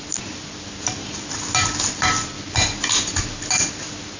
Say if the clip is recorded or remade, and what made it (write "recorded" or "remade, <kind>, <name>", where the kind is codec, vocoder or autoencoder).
recorded